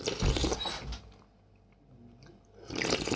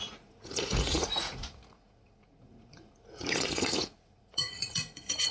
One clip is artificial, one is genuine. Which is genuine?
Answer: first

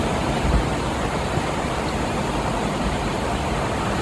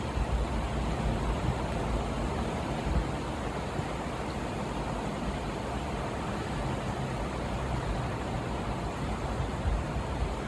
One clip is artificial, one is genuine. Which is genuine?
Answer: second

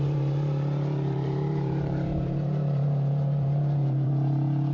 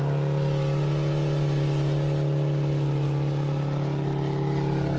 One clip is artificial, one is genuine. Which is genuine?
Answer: second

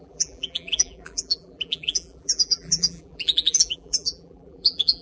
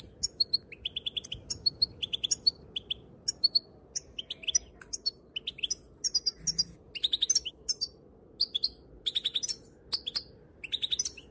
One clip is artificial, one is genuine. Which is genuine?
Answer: second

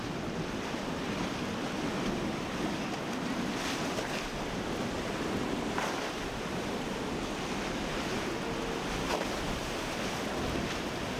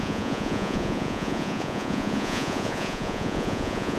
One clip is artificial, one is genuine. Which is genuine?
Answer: first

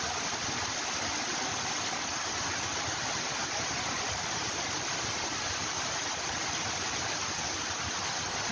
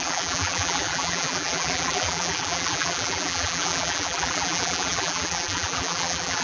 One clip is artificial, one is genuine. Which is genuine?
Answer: first